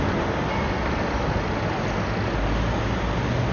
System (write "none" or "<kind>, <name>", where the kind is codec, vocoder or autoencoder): none